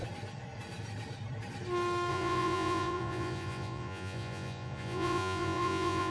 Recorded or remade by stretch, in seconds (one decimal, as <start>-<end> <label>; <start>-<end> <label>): 0.0-2.1 recorded; 2.1-6.1 remade